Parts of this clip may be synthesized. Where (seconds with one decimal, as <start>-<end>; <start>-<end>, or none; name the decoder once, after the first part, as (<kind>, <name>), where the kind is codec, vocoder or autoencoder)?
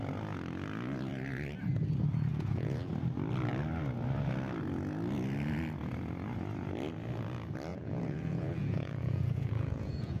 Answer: 2.3-2.9 (vocoder, Vocos); 7.7-10.2